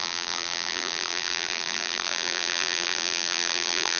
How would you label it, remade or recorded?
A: remade